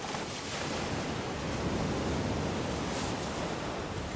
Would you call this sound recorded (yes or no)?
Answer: yes